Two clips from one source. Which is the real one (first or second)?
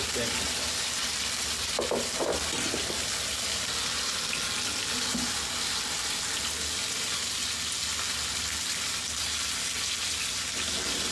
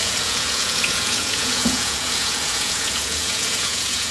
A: first